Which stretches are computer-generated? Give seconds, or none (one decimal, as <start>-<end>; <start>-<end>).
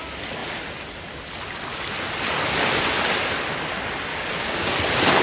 4.1-4.7